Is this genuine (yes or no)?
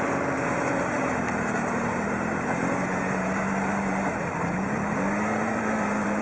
no